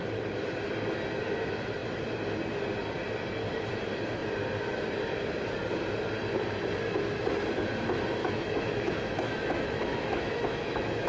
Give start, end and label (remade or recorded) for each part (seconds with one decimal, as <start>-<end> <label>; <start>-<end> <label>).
0.0-8.2 recorded; 8.2-11.1 remade